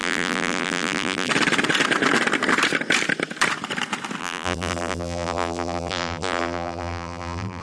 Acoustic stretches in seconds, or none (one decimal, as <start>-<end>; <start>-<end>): 1.3-4.2